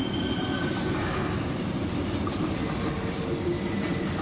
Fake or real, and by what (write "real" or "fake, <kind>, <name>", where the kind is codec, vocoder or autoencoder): real